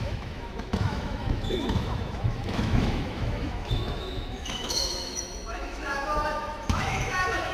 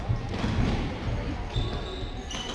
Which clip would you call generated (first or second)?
first